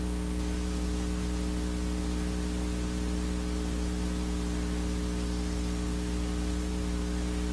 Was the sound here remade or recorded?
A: recorded